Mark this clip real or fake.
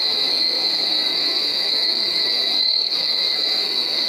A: fake